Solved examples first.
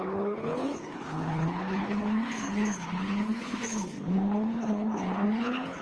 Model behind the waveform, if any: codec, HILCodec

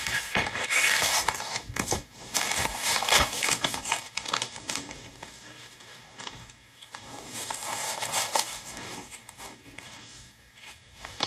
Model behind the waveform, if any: codec, DAC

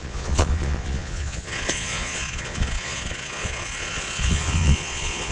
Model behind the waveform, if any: vocoder, Vocos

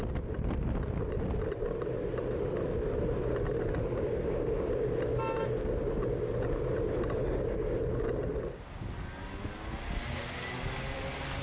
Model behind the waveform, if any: none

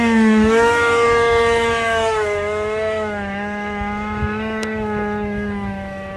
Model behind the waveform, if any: autoencoder, DAC-VAE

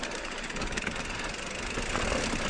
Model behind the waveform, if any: none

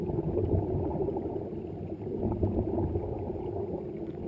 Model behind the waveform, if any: none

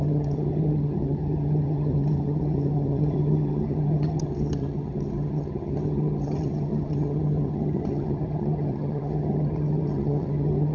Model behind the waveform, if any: vocoder, HiFi-GAN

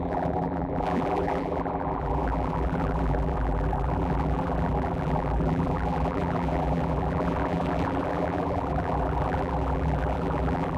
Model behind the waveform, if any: vocoder, BigVGAN v2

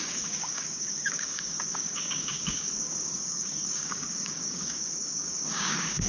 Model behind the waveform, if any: codec, DAC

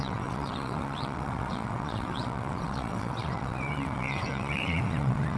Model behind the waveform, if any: vocoder, WaveNeXt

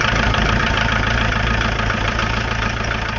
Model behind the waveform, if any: vocoder, BigVGAN v2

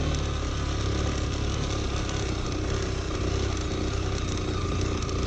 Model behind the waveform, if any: none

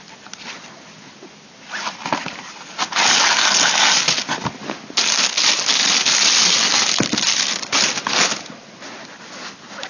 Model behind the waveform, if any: none